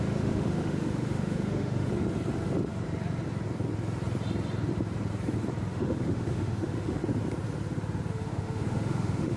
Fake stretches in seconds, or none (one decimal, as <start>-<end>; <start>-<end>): 0.0-1.9; 5.7-7.0; 8.1-9.4